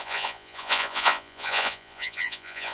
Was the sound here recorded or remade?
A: remade